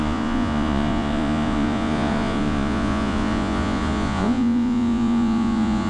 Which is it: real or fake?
fake